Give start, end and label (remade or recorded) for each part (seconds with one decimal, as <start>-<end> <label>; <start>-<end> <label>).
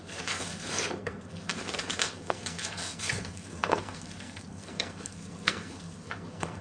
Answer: 0.0-6.6 remade